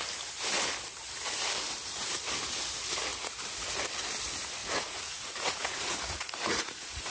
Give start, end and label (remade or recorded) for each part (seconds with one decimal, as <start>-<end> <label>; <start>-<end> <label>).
0.0-4.6 recorded; 4.6-7.1 remade